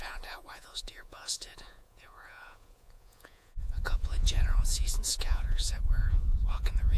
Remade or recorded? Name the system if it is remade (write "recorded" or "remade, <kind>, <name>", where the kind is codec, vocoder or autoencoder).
remade, vocoder, Vocos